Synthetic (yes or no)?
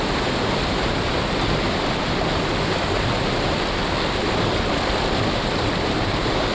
yes